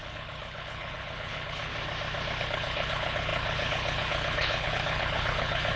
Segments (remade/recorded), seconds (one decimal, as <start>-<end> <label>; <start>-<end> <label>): 0.0-1.7 remade; 1.7-2.4 recorded; 2.4-5.8 remade